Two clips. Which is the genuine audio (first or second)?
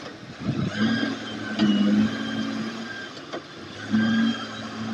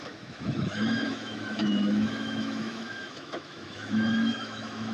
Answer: first